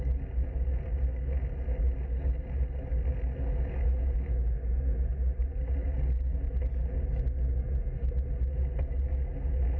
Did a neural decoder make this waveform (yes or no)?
no